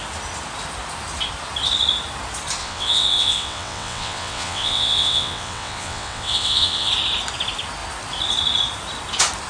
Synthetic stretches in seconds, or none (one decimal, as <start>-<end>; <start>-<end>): 2.6-6.9